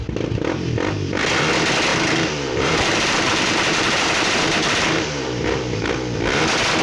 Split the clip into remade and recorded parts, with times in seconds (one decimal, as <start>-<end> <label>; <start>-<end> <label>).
0.0-1.9 recorded; 1.9-5.9 remade; 5.9-6.8 recorded